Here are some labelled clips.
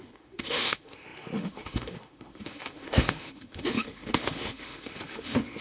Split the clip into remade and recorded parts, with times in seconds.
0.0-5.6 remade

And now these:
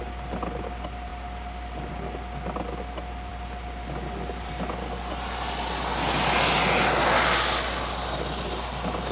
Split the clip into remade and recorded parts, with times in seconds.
0.0-9.1 recorded